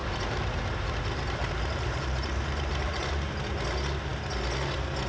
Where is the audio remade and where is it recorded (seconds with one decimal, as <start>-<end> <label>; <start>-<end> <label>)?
0.0-3.1 remade; 3.1-5.1 recorded